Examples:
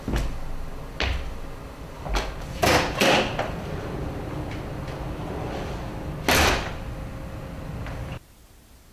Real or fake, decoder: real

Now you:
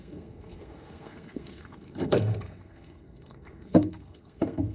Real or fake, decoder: fake, codec, SNAC